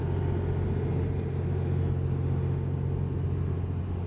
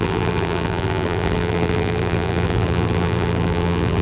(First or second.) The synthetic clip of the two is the second